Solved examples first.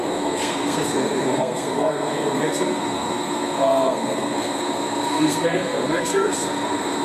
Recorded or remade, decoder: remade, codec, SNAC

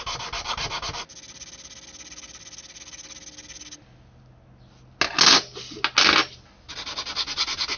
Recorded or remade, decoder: recorded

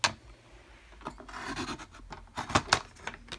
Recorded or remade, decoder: recorded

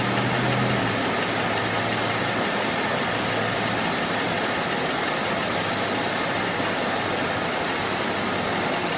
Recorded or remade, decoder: recorded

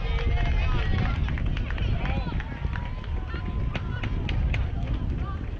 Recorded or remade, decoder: recorded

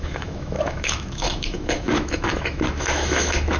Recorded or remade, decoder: remade, autoencoder, DAC-VAE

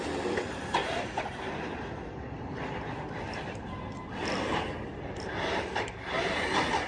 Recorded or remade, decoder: recorded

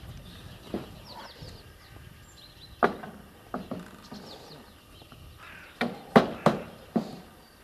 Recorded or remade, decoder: recorded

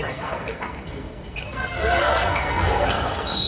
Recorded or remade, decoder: remade, codec, SNAC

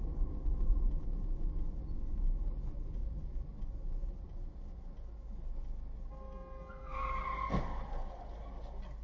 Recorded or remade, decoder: recorded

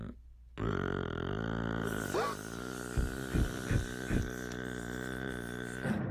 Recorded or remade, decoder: recorded